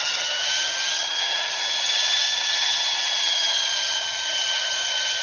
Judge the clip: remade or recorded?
remade